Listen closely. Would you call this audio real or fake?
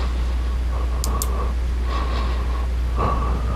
real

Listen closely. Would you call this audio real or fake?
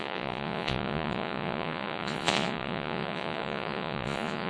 fake